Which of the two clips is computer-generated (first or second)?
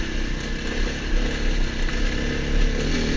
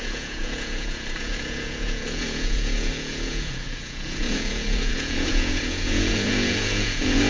second